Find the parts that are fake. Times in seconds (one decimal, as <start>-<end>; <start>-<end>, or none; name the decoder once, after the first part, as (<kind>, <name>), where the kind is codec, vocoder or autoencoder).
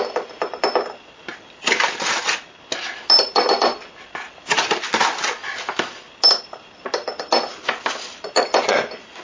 none